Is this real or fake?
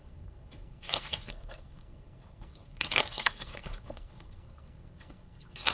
fake